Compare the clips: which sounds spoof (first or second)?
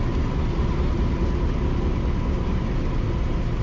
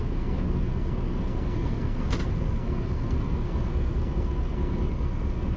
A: second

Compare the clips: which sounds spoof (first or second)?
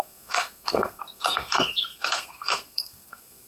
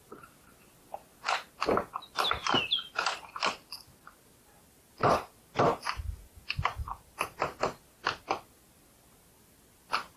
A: first